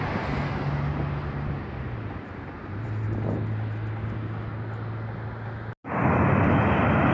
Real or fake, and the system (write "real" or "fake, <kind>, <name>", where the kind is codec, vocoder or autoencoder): real